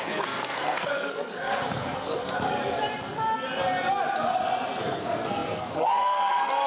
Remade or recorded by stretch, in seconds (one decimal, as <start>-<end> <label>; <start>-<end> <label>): 0.0-2.6 remade; 2.6-4.8 recorded; 4.8-6.7 remade